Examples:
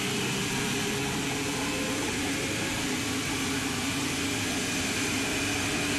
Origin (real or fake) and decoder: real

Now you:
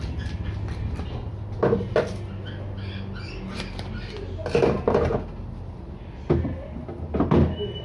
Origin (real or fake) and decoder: real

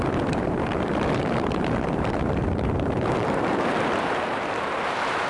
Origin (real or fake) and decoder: fake, vocoder, BigVGAN v2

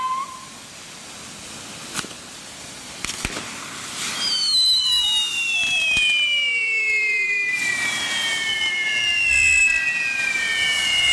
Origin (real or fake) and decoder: real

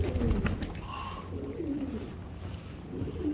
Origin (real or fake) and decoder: real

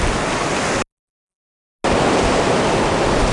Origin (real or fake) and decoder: real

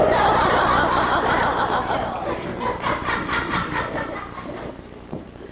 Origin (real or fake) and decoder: fake, vocoder, BigVGAN v2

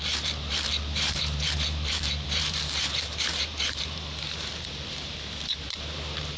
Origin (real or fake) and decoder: fake, vocoder, BigVGAN v2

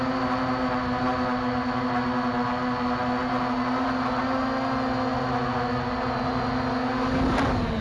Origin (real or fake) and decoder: real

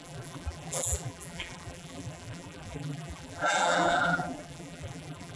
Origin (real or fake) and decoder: fake, vocoder, BigVGAN v2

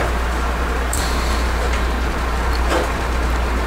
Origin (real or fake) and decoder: fake, vocoder, BigVGAN v2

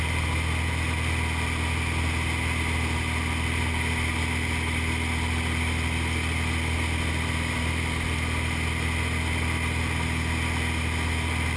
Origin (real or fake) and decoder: real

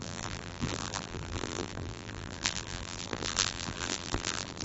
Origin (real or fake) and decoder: fake, vocoder, BigVGAN v2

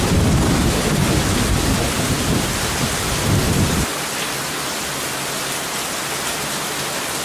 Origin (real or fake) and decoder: real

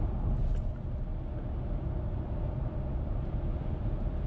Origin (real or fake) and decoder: real